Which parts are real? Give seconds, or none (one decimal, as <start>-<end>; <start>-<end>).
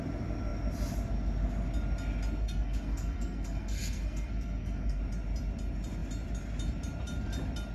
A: 0.0-2.4; 5.0-7.7